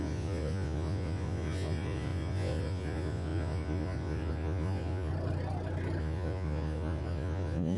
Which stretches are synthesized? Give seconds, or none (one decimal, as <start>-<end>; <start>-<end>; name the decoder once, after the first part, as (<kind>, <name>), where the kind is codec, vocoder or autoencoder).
0.0-5.1 (vocoder, Vocos); 6.0-7.8